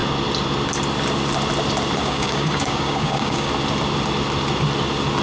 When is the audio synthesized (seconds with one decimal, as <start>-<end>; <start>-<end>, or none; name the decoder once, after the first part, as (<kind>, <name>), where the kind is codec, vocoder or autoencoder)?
2.0-3.5 (codec, DAC)